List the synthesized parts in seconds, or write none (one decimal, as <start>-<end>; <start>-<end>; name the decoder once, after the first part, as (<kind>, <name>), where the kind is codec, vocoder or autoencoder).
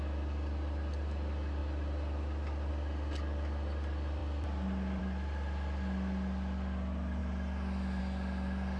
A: none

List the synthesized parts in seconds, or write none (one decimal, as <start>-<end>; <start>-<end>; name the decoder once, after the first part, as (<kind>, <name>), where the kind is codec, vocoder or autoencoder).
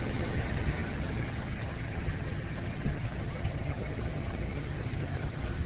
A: 0.0-5.7 (vocoder, HiFi-GAN)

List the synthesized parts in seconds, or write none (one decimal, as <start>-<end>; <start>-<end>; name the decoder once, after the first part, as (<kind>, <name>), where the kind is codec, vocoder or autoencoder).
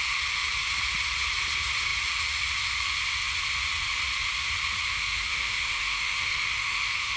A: 4.9-7.2 (autoencoder, DAC-VAE)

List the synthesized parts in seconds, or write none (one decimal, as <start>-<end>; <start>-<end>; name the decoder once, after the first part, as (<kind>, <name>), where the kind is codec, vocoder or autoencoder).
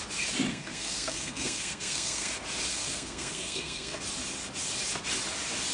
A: 0.5-2.3 (codec, SNAC); 2.7-4.0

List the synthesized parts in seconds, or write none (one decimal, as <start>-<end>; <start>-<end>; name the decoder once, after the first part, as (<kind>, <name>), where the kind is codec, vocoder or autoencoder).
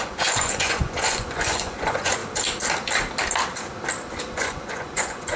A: 0.0-2.2 (vocoder, Vocos); 4.2-5.4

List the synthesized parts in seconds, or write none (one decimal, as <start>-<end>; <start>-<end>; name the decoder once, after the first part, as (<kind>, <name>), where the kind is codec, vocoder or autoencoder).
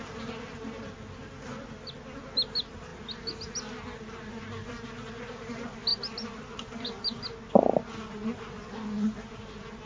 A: none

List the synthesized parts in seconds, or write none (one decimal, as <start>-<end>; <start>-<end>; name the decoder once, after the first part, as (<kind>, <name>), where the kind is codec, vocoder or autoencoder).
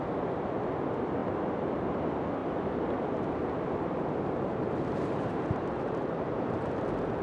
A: 2.4-6.7 (vocoder, BigVGAN v2)